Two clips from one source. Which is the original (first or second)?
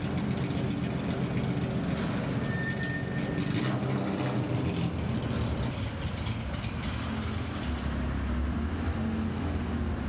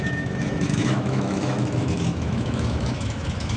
first